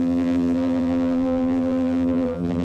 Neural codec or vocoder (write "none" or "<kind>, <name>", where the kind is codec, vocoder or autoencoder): vocoder, BigVGAN v2